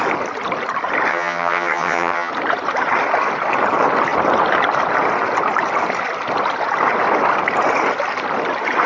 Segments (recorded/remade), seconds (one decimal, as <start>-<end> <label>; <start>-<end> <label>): 0.0-1.1 recorded; 1.1-2.3 remade; 2.3-8.9 recorded